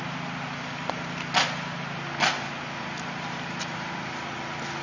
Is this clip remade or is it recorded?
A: recorded